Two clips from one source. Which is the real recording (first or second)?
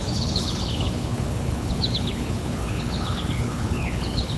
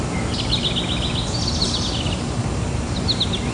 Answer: second